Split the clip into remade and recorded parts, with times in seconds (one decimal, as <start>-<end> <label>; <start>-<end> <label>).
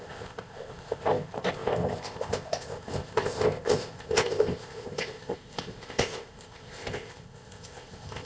0.0-8.3 remade